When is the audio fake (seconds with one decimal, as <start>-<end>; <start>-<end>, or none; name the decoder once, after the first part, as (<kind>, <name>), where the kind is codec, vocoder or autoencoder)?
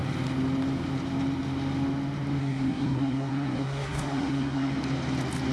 2.4-4.7 (codec, SNAC)